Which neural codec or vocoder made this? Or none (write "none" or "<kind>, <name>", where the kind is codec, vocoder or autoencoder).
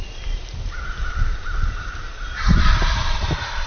vocoder, BigVGAN v2